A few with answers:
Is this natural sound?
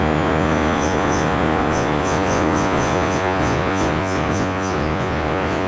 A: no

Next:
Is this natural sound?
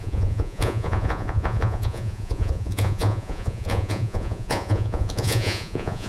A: no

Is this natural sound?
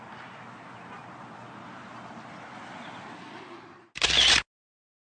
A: yes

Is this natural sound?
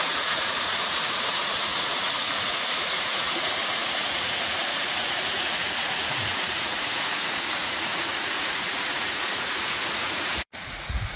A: no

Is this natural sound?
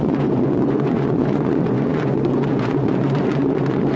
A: no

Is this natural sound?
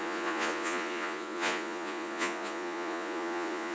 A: no